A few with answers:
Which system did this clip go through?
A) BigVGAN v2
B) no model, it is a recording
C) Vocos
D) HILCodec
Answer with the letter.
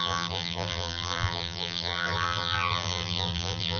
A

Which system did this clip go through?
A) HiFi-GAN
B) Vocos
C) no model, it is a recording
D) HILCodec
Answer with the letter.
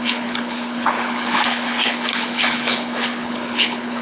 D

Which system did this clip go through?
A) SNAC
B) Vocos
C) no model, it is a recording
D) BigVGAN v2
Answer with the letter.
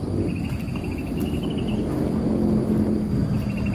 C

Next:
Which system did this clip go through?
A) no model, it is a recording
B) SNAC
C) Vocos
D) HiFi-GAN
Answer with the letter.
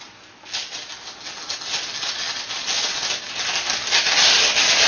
A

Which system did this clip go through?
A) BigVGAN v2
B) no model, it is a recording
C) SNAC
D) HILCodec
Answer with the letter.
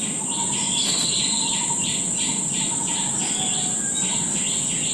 A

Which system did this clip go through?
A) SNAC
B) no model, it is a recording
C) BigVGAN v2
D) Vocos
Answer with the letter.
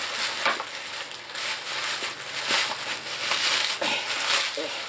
B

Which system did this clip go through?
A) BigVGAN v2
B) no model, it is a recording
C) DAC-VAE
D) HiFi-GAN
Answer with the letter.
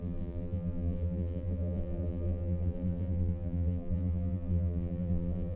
A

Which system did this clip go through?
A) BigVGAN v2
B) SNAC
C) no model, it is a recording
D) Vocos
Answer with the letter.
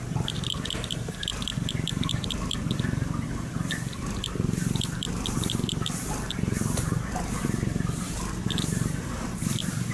A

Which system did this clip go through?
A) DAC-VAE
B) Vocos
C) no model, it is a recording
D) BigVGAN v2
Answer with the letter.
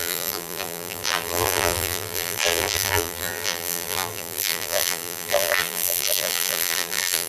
D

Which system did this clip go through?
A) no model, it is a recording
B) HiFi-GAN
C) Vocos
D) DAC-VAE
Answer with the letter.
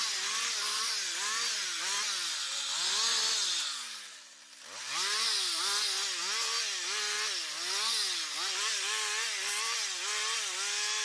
A